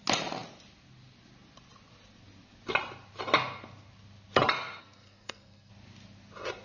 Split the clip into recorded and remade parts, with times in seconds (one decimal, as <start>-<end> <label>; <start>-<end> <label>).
0.0-4.8 recorded; 4.8-5.7 remade; 5.7-6.6 recorded

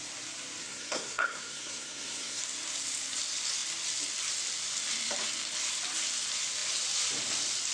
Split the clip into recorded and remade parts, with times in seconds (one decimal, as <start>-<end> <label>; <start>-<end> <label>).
0.0-0.6 recorded; 0.6-2.4 remade; 2.4-7.7 recorded

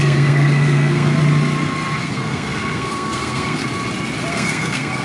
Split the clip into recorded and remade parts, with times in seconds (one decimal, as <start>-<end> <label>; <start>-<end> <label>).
0.0-1.2 remade; 1.2-2.0 recorded; 2.0-3.6 remade; 3.6-4.3 recorded; 4.3-5.0 remade

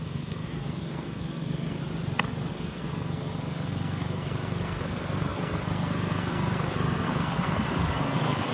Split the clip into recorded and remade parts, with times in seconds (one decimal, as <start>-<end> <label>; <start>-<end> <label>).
0.0-1.8 remade; 1.8-2.5 recorded; 2.5-8.5 remade

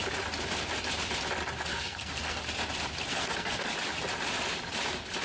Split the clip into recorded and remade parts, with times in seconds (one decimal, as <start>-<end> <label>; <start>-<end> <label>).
0.0-1.7 recorded; 1.7-2.4 remade; 2.4-3.1 recorded; 3.1-3.7 remade; 3.7-5.2 recorded

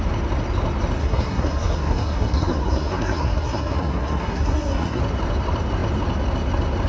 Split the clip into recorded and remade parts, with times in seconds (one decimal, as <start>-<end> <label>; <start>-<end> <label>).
0.0-1.0 recorded; 1.0-5.0 remade; 5.0-6.9 recorded